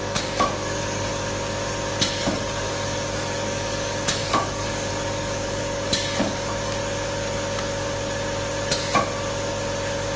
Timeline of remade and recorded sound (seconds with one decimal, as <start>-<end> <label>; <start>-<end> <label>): 0.0-1.1 remade; 1.1-2.1 recorded; 2.1-6.8 remade; 6.8-10.2 recorded